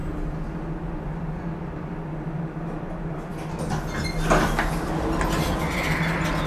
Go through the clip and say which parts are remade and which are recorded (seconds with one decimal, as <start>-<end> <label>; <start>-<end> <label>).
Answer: 0.0-6.5 recorded